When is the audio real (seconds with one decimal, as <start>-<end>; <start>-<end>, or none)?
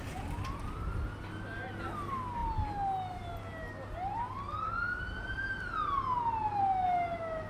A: 0.0-7.5